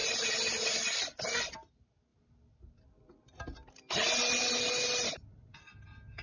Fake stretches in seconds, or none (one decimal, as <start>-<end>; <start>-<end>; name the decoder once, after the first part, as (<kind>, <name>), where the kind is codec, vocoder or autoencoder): none